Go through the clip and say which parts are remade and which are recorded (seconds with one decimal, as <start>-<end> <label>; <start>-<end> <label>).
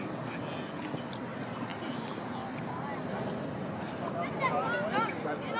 0.0-5.6 recorded